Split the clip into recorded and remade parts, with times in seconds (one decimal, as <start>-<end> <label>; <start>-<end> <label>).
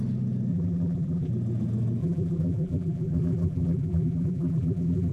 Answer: 0.0-0.5 recorded; 0.5-1.3 remade; 1.3-2.0 recorded; 2.0-5.1 remade